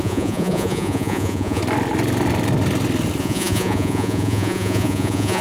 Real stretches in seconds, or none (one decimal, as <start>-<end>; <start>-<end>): 1.6-3.2